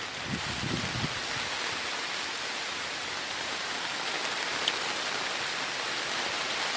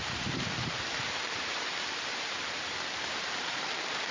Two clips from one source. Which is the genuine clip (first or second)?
first